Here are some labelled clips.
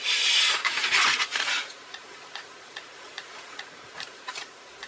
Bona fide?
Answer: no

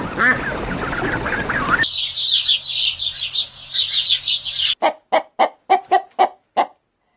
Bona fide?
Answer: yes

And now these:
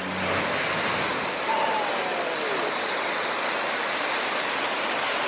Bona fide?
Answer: yes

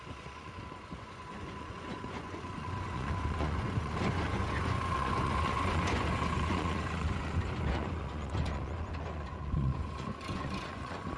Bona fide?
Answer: no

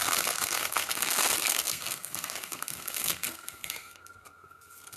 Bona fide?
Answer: no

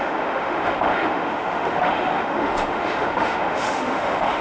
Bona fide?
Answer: no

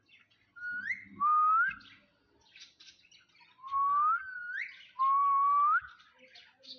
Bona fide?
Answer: yes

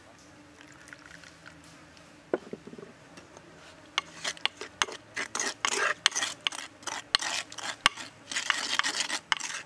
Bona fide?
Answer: yes